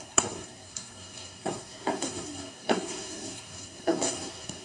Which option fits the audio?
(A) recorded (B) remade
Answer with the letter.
B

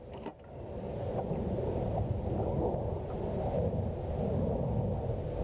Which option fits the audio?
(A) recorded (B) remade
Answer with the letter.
A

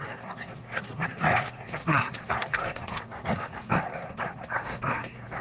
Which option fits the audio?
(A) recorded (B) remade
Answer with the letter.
B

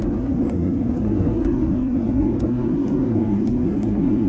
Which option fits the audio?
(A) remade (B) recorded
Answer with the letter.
A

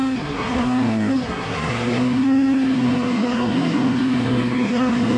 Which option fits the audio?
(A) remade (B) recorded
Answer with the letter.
A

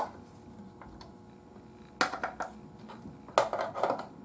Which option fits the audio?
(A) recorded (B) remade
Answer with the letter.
A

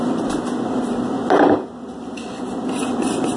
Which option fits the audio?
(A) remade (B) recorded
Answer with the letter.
B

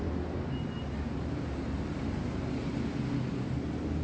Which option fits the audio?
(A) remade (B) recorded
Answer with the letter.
B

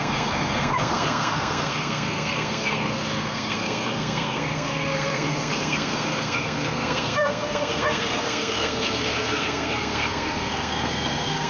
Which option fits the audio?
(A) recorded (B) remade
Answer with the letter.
B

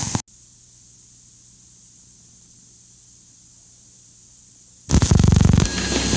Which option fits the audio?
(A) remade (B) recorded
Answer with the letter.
B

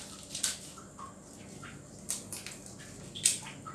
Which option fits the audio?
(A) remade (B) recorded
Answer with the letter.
B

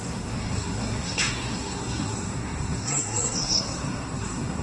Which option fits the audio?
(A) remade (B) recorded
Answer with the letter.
A